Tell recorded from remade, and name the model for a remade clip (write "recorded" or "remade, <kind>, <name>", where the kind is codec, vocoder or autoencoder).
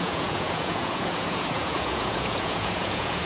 remade, vocoder, Vocos